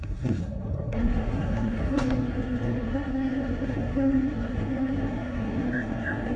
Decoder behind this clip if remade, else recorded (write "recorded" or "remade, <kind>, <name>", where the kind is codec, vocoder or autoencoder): remade, codec, SNAC